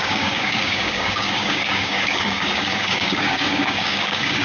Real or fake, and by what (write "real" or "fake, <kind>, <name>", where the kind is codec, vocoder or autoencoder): fake, codec, DAC